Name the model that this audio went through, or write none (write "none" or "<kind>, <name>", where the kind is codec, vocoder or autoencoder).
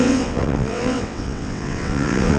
vocoder, WaveNeXt